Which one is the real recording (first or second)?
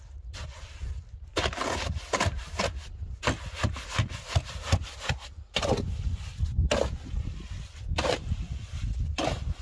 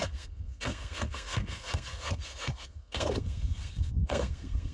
first